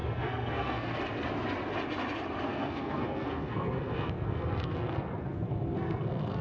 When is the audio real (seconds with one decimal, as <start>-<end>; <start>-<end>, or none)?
1.0-2.5